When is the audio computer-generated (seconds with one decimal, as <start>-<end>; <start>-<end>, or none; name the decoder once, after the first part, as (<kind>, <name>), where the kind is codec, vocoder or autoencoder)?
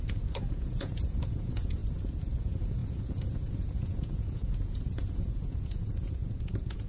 0.0-1.8 (vocoder, Vocos); 2.3-6.9